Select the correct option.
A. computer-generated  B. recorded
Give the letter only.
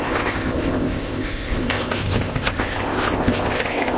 A